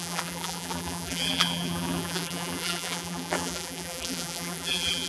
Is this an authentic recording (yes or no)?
no